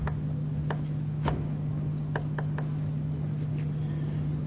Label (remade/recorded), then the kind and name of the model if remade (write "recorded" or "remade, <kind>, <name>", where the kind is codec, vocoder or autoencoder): recorded